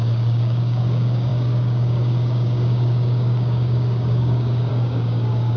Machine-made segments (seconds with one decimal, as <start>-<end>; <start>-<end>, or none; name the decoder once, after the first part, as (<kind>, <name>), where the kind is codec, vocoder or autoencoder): 0.0-5.6 (codec, DAC)